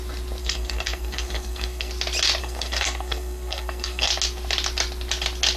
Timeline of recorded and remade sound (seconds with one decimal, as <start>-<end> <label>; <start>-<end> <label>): 0.0-0.4 recorded; 0.4-1.9 remade; 1.9-2.4 recorded; 2.4-4.1 remade; 4.1-5.6 recorded